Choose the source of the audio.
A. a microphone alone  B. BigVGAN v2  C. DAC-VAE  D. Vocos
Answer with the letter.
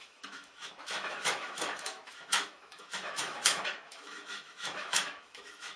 C